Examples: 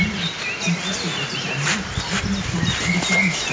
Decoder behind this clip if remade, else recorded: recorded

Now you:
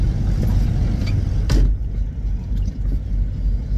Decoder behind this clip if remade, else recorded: recorded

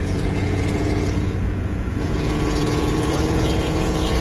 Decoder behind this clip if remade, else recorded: remade, vocoder, Vocos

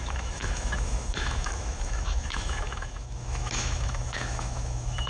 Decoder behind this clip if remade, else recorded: remade, autoencoder, DAC-VAE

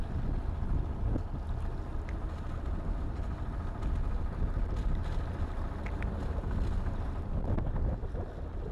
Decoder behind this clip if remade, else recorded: recorded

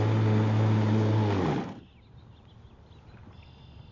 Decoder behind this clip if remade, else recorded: recorded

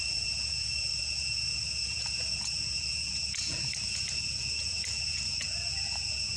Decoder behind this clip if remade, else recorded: remade, vocoder, Vocos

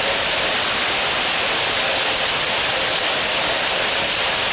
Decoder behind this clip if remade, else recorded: recorded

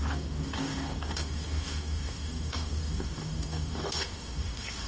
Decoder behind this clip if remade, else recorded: remade, codec, DAC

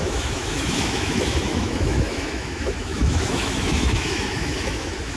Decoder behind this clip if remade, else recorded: remade, autoencoder, DAC-VAE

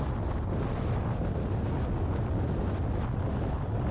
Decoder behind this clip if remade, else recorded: recorded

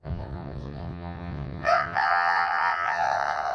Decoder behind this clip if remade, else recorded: remade, vocoder, WaveNeXt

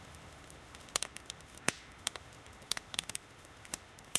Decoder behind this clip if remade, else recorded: remade, autoencoder, DAC-VAE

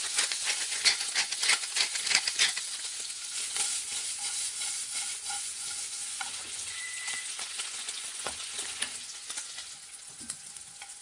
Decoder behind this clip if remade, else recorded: remade, vocoder, Vocos